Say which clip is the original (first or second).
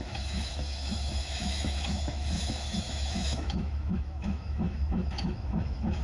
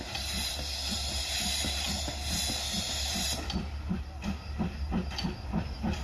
second